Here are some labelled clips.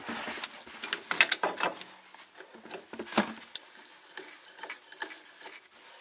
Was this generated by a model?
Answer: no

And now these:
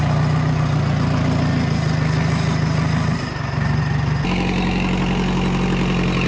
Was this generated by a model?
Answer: no